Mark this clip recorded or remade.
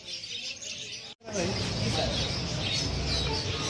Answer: recorded